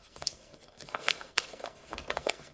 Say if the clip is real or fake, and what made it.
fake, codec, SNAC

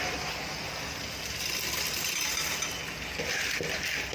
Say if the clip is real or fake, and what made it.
fake, vocoder, BigVGAN v2